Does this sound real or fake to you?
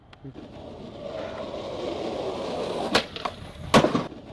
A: real